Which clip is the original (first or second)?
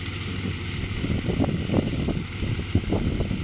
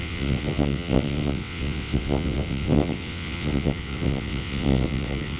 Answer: first